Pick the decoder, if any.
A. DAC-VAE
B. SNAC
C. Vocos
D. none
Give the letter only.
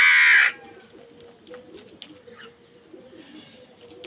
D